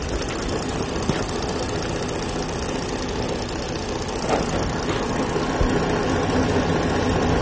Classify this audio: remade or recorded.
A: recorded